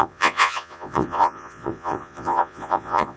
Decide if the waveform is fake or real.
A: fake